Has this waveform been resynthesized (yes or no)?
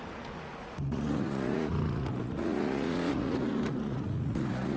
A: yes